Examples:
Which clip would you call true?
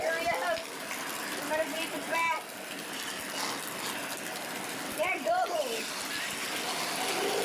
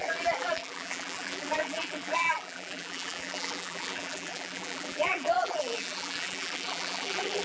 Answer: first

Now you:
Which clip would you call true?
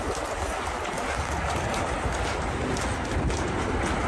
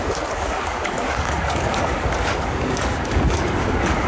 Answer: first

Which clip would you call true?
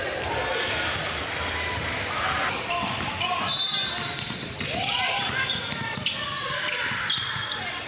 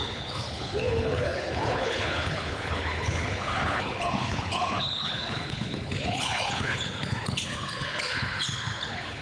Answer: first